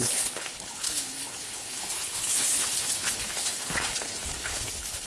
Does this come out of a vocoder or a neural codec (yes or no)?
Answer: yes